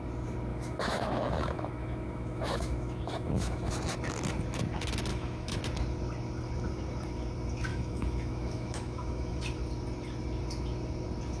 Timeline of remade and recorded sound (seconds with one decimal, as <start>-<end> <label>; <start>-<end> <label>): 0.0-0.5 recorded; 0.5-3.7 remade; 3.7-5.1 recorded; 5.1-5.6 remade; 5.6-7.7 recorded; 7.7-9.4 remade; 9.4-11.4 recorded